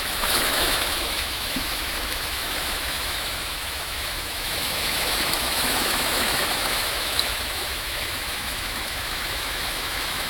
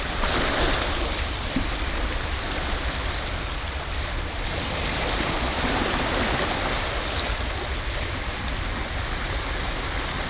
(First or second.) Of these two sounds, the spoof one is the first